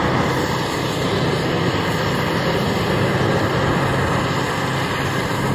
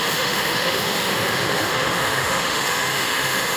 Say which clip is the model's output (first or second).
second